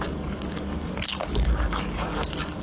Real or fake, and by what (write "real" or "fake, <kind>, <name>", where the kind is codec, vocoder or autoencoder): fake, codec, DAC